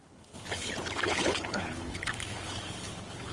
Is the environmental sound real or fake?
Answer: fake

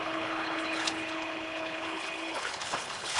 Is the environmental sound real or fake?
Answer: fake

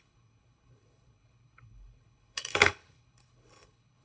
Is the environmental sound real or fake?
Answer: fake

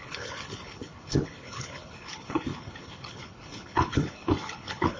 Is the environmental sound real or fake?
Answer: fake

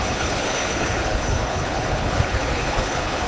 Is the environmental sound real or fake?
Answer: fake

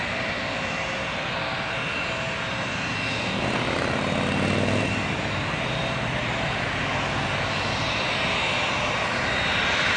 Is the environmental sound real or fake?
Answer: real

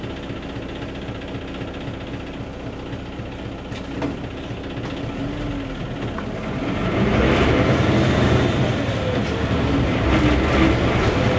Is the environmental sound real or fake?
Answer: real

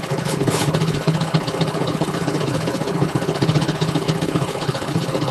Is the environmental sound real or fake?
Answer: fake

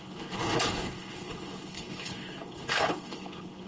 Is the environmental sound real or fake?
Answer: fake